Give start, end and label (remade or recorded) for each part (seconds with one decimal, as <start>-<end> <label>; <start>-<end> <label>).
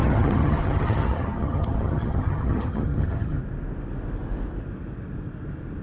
0.0-3.4 remade; 3.4-5.8 recorded